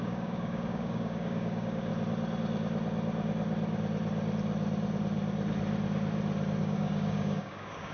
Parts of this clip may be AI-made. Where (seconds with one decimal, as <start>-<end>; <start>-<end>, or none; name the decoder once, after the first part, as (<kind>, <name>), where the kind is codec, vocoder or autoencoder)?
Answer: 0.0-1.9 (codec, DAC); 6.6-7.9